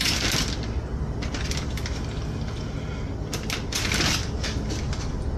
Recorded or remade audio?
recorded